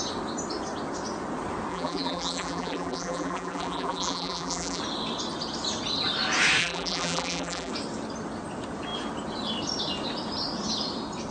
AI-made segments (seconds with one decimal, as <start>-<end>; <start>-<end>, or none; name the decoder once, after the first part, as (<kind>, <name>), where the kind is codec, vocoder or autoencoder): 1.7-4.8 (vocoder, BigVGAN v2); 6.6-7.7